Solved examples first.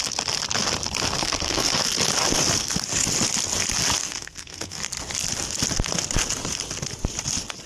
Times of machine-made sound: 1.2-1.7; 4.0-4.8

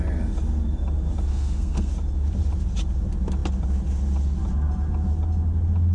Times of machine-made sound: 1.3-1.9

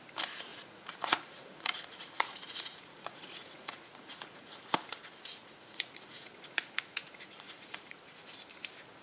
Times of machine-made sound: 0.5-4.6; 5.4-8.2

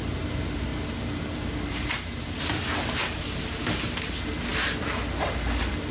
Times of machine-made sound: none

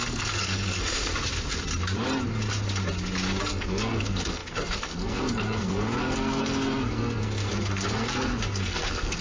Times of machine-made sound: 0.0-1.1; 3.4-9.2

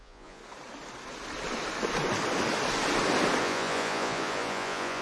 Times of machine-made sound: 0.0-0.4; 3.4-5.0

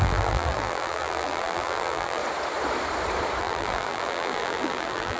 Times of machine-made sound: 0.0-2.2; 3.4-5.2

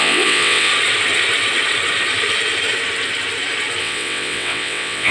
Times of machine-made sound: 0.0-0.7; 3.8-5.1